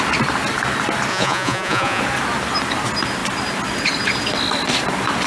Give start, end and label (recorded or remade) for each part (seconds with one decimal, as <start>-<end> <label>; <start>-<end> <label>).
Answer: 0.0-1.1 recorded; 1.1-2.0 remade; 2.0-5.3 recorded